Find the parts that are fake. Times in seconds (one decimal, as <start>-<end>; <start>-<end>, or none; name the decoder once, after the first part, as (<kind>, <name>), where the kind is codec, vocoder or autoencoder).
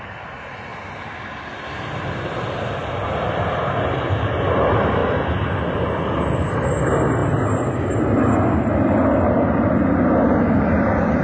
none